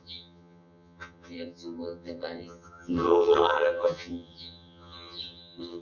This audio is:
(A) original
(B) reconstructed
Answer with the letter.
B